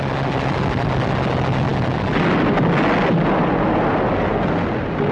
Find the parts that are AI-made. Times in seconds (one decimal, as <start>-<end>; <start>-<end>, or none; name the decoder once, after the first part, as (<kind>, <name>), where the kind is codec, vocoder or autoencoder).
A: none

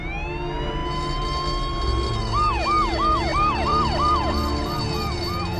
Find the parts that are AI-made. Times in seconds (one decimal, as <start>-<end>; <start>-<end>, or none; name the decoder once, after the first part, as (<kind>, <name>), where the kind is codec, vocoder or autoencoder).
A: 3.3-4.8 (vocoder, BigVGAN v2)

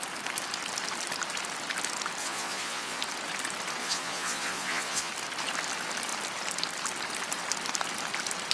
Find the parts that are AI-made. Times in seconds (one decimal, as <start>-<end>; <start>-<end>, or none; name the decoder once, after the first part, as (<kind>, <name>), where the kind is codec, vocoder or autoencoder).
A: 2.2-3.0 (vocoder, Vocos); 3.8-5.1

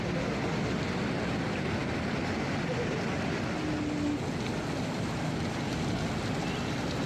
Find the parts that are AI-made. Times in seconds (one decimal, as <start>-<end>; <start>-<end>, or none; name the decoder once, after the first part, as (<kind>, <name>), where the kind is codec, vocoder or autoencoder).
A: none

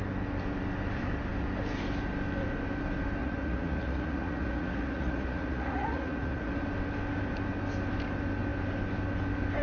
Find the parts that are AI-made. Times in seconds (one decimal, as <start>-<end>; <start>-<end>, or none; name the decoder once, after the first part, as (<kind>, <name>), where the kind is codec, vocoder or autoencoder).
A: 3.2-6.5 (vocoder, Vocos)

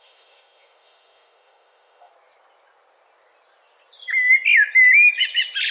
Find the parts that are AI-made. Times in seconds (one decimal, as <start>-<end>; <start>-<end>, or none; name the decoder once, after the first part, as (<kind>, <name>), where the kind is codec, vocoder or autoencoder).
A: 0.0-2.1 (autoencoder, DAC-VAE)